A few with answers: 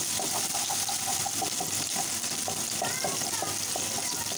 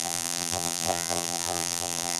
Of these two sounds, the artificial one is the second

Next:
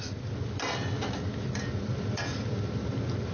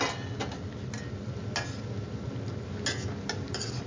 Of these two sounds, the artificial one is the first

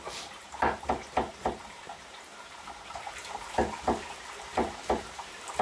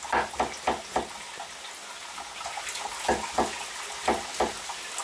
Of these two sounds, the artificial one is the first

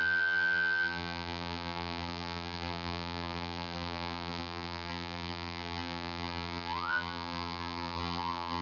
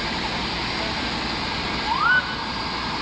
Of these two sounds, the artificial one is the first